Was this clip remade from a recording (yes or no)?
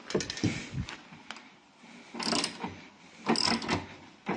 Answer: no